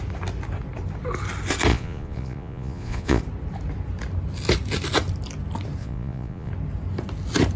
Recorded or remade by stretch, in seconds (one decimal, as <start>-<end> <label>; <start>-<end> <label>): 0.0-1.7 recorded; 1.7-3.2 remade; 3.2-5.8 recorded; 5.8-6.5 remade; 6.5-7.6 recorded